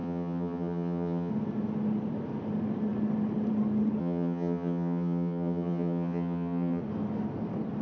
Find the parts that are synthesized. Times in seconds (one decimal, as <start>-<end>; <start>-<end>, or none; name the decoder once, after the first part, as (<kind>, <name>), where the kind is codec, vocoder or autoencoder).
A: 0.0-1.3 (vocoder, HiFi-GAN); 4.0-6.8